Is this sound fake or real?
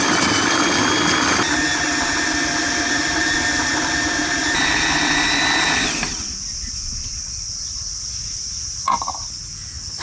real